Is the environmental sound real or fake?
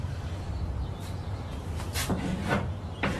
fake